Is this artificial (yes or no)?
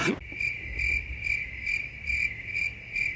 no